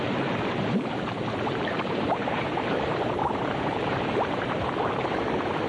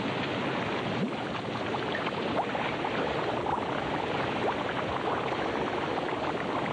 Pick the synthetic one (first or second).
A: first